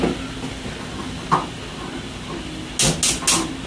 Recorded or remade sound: recorded